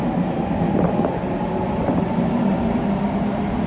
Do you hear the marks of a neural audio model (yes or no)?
no